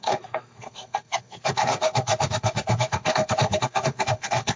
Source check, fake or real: fake